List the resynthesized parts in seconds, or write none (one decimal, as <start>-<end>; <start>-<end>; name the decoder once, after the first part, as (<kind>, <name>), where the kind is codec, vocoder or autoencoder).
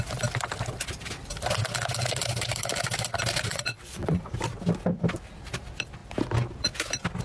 3.5-4.3 (vocoder, WaveNeXt)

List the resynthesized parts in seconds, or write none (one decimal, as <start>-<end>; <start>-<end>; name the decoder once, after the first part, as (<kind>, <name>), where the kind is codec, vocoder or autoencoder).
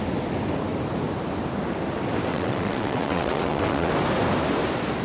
2.3-3.9 (vocoder, WaveNeXt)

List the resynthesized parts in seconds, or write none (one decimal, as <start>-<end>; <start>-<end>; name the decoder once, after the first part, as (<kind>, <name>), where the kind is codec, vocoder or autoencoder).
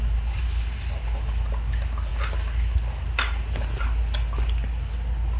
none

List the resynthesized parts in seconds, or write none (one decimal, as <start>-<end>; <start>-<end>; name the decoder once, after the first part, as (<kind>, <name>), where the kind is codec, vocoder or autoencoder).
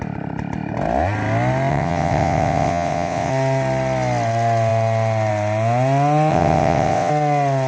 1.7-3.3 (vocoder, WaveNeXt); 6.3-7.1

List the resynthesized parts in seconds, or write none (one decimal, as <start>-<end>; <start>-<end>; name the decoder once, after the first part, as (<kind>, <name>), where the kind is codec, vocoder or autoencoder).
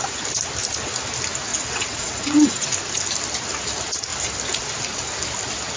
1.5-2.7 (vocoder, WaveNeXt)